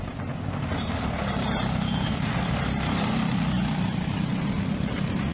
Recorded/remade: remade